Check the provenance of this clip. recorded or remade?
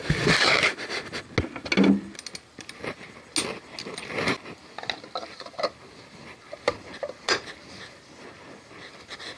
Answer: recorded